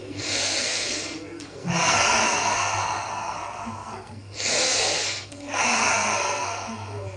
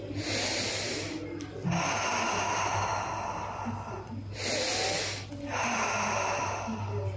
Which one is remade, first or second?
first